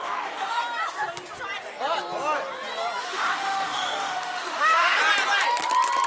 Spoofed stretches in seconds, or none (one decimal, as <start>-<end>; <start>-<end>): 0.0-0.6; 3.0-5.0